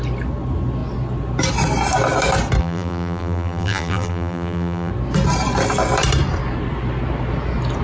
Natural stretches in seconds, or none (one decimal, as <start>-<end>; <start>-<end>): 0.0-2.6; 4.9-7.8